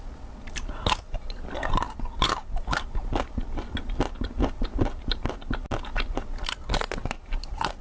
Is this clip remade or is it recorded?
recorded